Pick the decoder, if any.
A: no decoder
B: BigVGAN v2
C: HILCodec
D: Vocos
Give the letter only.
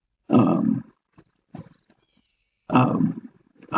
A